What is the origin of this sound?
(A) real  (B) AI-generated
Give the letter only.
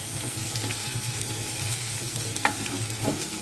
B